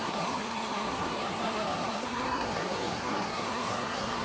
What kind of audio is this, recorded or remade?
remade